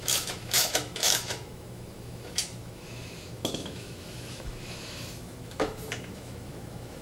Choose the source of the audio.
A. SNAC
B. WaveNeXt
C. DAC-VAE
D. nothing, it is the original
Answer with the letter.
C